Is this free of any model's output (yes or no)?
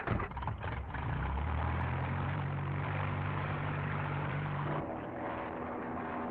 no